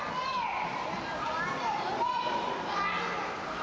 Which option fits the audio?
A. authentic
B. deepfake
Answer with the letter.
A